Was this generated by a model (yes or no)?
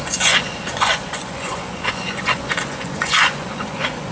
yes